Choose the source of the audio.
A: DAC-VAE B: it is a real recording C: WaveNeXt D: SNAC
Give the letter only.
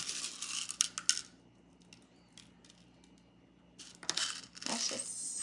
B